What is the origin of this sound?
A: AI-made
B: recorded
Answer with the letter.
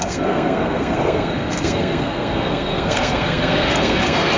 A